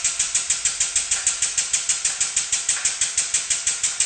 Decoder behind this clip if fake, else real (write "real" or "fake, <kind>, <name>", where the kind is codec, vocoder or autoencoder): real